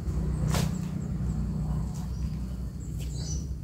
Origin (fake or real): real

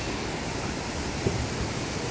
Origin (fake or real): real